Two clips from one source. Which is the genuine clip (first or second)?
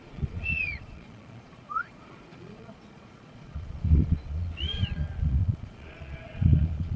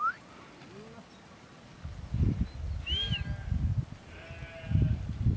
second